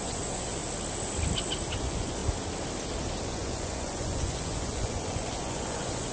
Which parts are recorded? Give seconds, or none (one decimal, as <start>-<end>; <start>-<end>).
0.6-1.8; 2.2-3.3